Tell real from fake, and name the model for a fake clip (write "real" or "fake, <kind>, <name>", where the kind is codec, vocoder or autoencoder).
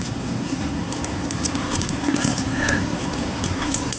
fake, codec, SNAC